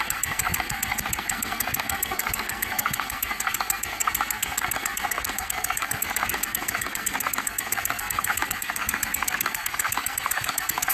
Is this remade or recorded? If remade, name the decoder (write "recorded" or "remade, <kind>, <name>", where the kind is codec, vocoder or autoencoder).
remade, codec, SNAC